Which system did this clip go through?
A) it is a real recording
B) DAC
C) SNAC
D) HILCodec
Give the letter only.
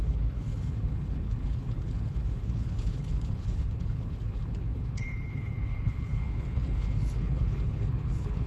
D